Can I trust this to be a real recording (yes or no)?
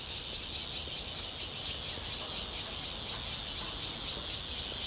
yes